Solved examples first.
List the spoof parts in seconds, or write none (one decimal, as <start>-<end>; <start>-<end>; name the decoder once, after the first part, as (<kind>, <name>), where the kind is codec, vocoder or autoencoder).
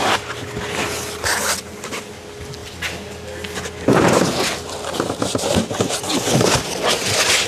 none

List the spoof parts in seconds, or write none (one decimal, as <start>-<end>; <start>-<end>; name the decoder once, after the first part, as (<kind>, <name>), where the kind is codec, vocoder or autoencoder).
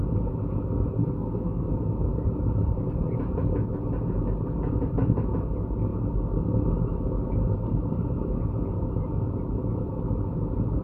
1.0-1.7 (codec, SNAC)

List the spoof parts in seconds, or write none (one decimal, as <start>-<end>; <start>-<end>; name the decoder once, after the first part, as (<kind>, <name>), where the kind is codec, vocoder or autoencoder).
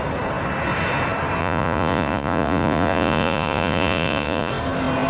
1.4-4.5 (vocoder, Vocos)